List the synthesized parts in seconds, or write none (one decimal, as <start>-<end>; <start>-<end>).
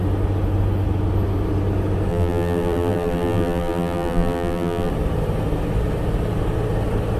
2.1-4.9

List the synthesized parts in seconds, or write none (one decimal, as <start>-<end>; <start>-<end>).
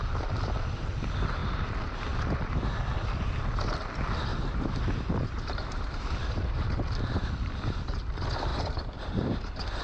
1.4-2.2; 4.3-6.7; 8.5-9.8